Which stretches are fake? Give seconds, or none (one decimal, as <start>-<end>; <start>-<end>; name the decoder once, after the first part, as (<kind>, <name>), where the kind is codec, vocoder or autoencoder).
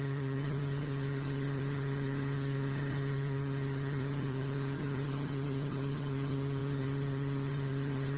0.0-8.2 (vocoder, HiFi-GAN)